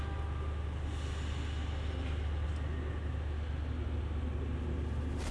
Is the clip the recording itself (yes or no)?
yes